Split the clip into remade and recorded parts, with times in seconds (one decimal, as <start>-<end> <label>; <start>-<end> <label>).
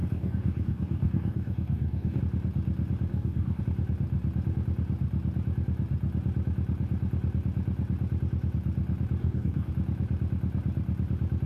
0.0-2.2 remade; 2.2-3.1 recorded; 3.1-3.6 remade; 3.6-9.2 recorded; 9.2-9.7 remade; 9.7-11.5 recorded